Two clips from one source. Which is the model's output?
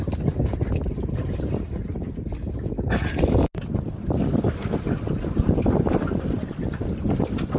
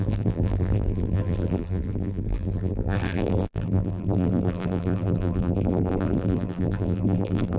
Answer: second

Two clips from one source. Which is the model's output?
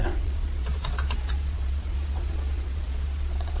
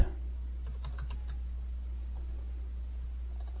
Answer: first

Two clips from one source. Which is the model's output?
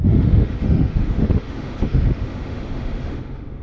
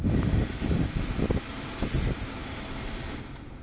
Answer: first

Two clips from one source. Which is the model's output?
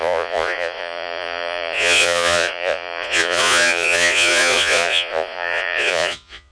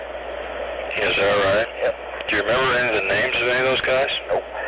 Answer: first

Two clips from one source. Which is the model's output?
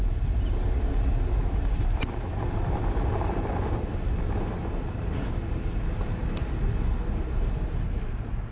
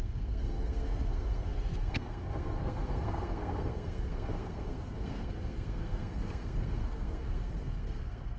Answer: second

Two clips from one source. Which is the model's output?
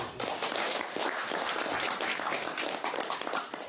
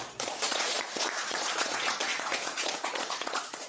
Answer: second